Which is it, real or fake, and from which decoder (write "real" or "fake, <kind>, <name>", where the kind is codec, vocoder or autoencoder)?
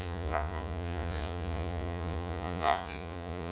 fake, vocoder, Vocos